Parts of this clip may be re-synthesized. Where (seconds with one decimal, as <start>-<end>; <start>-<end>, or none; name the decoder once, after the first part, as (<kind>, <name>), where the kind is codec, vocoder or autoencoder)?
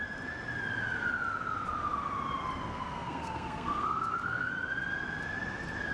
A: 2.7-4.5 (codec, SNAC)